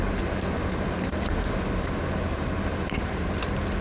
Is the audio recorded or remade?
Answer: recorded